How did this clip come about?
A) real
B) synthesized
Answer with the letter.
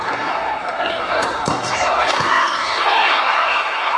B